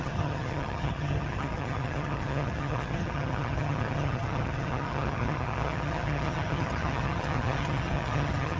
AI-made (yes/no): yes